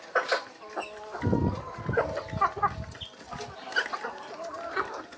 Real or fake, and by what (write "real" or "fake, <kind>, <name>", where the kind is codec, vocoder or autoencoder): real